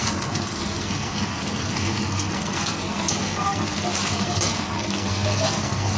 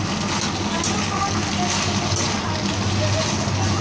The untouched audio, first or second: second